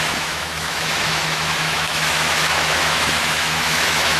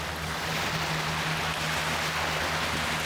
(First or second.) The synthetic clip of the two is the first